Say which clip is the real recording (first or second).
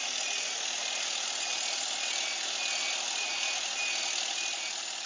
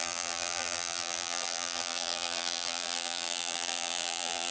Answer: first